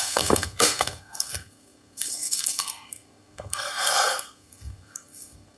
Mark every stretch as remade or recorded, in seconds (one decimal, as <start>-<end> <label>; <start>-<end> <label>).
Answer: 0.0-5.6 remade